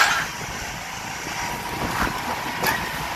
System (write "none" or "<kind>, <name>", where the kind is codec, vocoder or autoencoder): none